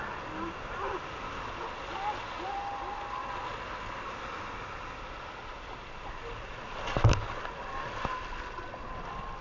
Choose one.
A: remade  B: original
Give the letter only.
B